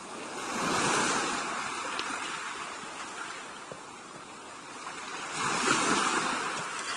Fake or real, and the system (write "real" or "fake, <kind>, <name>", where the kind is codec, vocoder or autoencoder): real